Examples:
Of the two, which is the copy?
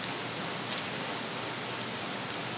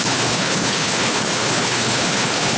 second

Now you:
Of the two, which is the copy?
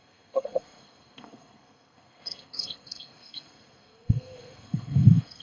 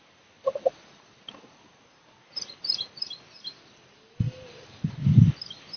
first